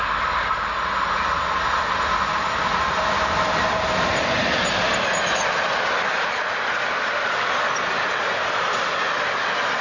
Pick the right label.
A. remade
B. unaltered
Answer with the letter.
B